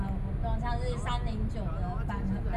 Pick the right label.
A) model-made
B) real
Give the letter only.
B